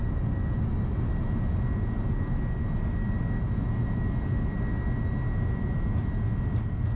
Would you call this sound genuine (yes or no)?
yes